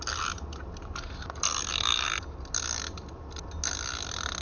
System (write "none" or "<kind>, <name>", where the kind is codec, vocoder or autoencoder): none